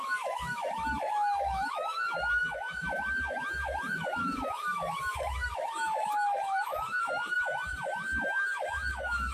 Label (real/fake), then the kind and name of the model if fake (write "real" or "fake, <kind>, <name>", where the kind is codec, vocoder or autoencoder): fake, autoencoder, DAC-VAE